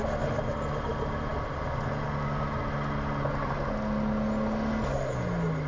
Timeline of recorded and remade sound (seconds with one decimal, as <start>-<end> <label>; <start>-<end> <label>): 0.0-5.7 recorded